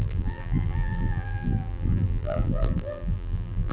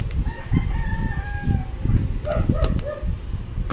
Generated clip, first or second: first